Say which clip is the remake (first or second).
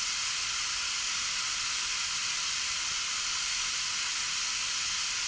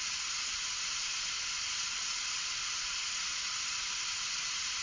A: second